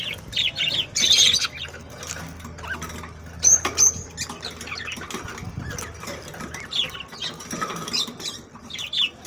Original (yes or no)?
yes